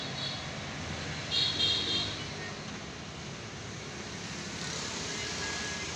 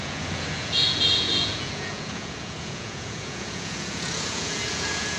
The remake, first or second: second